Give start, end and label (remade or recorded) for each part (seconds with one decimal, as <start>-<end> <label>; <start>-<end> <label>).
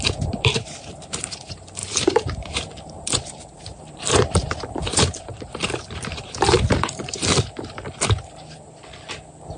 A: 0.0-7.2 remade; 7.2-9.6 recorded